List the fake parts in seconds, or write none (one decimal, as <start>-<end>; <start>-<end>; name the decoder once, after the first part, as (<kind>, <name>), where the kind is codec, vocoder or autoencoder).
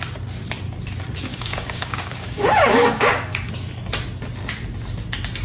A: 1.3-3.5 (codec, DAC)